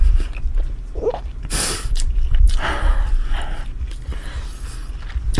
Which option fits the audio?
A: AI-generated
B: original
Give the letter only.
A